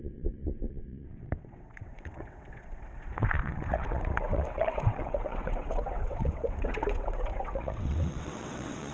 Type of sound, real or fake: fake